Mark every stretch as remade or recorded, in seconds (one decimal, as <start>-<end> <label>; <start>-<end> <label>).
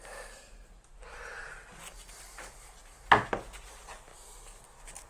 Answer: 0.0-5.1 recorded